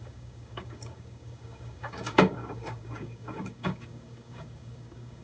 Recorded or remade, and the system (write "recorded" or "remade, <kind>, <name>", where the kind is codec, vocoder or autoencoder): remade, codec, DAC